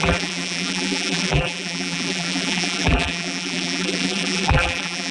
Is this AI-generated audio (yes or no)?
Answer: yes